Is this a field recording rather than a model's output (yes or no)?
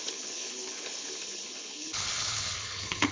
no